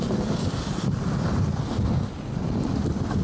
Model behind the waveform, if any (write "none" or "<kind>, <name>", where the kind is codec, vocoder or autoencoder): none